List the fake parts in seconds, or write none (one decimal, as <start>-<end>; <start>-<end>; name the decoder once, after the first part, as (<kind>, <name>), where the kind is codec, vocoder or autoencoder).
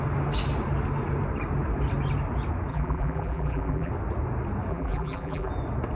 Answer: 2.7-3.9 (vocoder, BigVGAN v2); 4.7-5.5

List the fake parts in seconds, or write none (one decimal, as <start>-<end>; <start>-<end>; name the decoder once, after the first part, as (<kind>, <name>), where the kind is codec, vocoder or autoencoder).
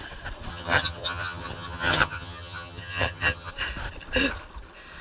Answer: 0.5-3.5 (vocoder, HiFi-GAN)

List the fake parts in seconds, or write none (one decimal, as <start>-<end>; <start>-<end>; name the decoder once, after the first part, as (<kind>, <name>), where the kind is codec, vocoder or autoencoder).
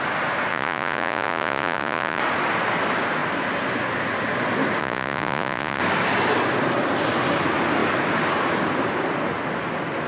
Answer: 0.5-2.2 (vocoder, Vocos); 4.8-5.8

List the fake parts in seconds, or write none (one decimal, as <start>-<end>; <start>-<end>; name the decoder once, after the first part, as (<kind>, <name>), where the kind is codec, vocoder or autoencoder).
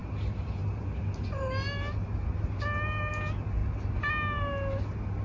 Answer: none